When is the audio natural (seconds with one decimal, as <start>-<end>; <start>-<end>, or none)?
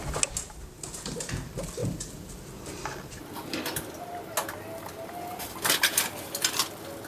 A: 0.0-7.1